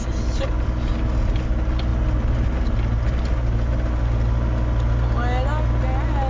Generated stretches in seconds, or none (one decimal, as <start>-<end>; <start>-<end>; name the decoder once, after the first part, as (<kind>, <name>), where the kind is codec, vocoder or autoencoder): none